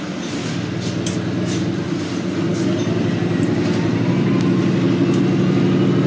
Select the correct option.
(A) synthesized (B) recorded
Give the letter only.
B